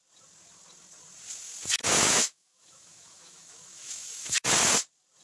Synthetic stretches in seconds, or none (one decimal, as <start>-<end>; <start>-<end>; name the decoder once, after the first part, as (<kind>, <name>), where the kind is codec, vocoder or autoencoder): 1.8-4.5 (autoencoder, DAC-VAE)